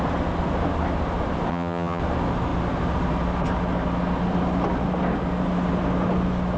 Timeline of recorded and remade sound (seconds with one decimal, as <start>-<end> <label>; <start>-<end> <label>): 0.0-1.5 recorded; 1.5-2.0 remade; 2.0-6.6 recorded